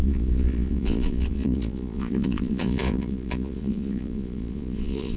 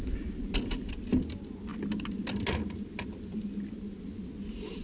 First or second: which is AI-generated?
first